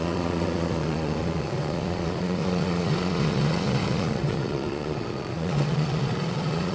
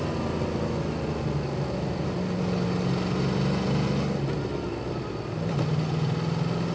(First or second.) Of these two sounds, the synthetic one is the first